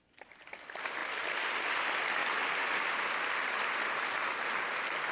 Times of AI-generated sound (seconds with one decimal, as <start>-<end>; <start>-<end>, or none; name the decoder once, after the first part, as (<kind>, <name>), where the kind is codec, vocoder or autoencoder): none